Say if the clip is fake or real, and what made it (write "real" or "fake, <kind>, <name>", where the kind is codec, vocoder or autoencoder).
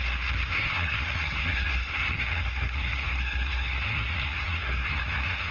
fake, codec, SNAC